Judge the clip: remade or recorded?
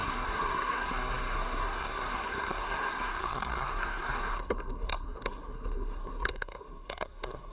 remade